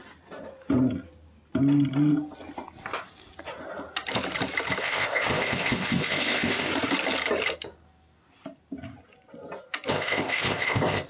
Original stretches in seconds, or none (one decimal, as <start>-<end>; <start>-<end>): 0.0-4.8; 6.7-9.9